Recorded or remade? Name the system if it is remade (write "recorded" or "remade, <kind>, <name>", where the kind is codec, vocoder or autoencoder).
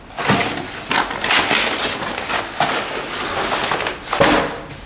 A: recorded